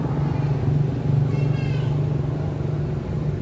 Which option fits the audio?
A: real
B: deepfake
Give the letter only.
A